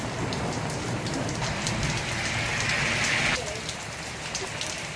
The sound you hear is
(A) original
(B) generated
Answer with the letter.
A